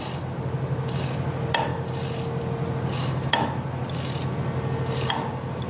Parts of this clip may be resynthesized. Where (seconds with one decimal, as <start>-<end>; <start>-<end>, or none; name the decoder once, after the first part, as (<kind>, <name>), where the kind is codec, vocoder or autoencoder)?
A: none